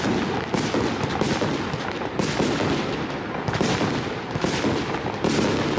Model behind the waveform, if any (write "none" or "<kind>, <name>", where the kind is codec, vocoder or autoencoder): none